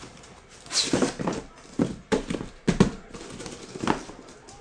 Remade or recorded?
recorded